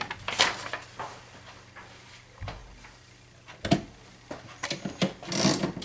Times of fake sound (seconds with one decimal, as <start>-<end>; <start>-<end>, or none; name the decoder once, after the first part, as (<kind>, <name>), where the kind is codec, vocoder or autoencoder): none